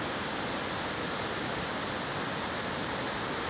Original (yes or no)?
yes